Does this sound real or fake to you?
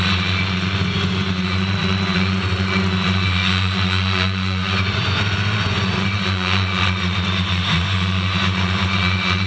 fake